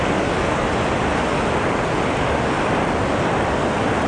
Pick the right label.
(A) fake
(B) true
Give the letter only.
B